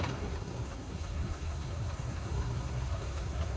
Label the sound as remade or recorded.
remade